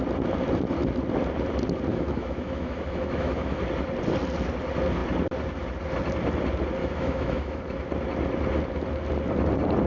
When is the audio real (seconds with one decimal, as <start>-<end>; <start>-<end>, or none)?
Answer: 0.0-1.9; 3.6-6.8; 7.6-9.9